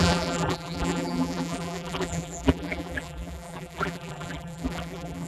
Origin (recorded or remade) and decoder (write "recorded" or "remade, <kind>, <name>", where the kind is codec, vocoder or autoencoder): remade, vocoder, BigVGAN v2